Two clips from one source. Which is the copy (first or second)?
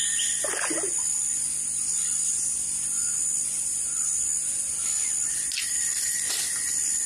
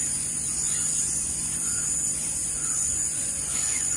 second